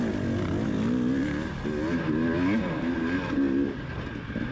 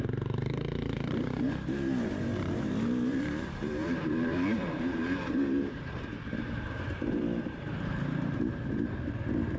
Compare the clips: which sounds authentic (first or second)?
first